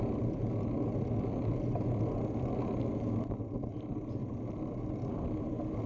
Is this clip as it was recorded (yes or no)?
yes